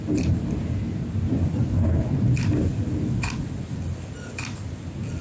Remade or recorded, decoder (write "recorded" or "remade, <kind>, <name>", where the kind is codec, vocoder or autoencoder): recorded